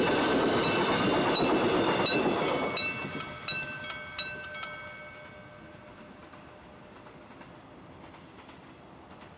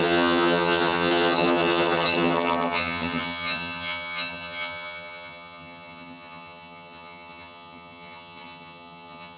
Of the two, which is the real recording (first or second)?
first